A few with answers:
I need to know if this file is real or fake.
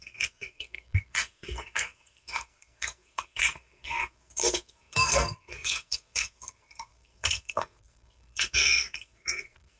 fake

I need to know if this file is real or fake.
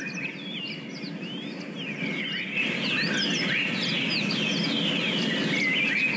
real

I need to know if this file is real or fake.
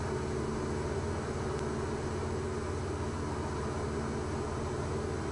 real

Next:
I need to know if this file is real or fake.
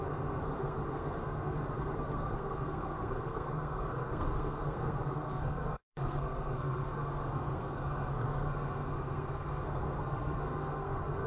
fake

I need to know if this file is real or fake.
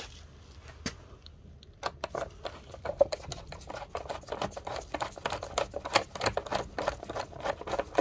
real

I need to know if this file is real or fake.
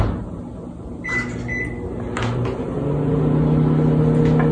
real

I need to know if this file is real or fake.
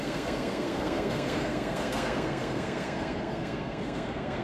fake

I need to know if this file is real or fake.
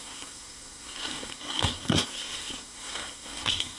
fake